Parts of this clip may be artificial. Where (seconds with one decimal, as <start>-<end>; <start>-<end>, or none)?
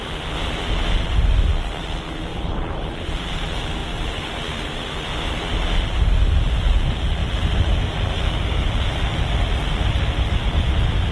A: 2.3-3.1; 7.2-9.9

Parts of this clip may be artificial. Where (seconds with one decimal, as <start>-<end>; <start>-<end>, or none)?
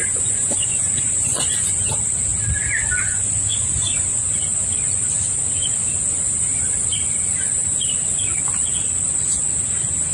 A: 0.0-1.9; 3.6-4.3